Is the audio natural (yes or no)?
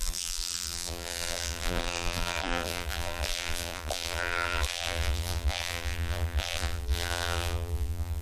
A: no